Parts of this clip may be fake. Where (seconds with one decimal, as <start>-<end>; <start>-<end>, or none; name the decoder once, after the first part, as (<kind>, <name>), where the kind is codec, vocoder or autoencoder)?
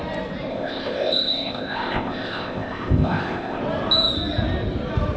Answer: 0.5-3.6 (codec, ZipCodec)